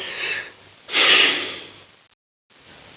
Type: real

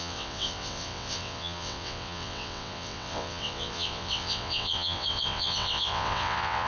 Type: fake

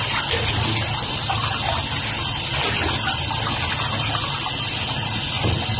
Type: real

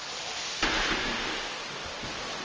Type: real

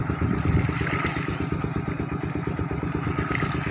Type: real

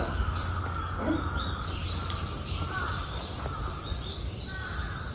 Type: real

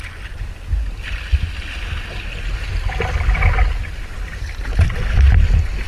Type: real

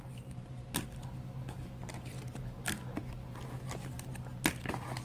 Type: real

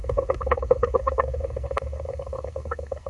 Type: fake